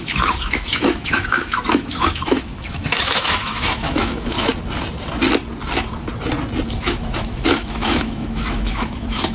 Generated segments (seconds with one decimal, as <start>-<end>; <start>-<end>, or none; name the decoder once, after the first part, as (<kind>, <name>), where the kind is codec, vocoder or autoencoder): 0.0-4.5 (autoencoder, DAC-VAE); 6.8-9.3